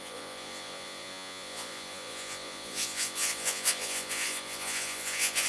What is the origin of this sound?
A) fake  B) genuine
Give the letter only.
A